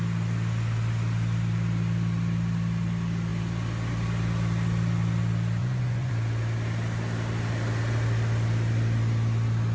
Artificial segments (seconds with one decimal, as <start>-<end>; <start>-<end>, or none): 5.6-6.1